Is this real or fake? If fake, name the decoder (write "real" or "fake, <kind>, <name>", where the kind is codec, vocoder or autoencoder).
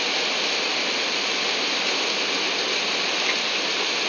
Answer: real